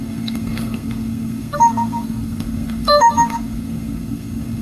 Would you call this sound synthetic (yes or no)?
yes